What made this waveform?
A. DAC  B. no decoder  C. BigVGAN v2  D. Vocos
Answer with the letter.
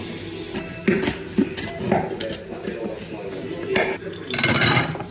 B